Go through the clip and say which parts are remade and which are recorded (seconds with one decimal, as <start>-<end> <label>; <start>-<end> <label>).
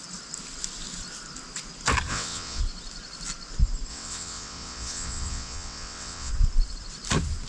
0.0-2.1 recorded; 2.1-2.6 remade; 2.6-3.9 recorded; 3.9-6.3 remade; 6.3-7.5 recorded